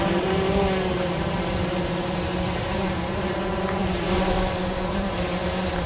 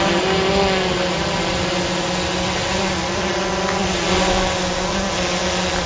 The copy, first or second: first